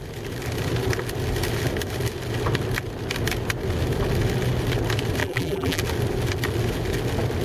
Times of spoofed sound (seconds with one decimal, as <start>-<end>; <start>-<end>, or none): 5.2-5.8

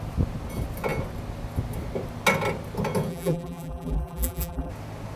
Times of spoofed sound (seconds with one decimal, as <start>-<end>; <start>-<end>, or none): 3.1-4.7

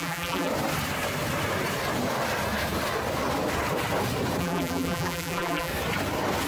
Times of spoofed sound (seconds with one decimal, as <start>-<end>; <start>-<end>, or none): 0.0-0.5; 4.4-5.7

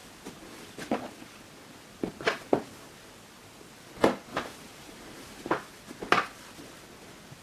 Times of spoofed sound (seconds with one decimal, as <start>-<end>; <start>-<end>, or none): 4.3-5.5

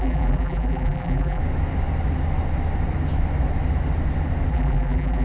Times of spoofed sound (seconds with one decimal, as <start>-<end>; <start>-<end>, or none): 0.0-1.4; 4.5-5.2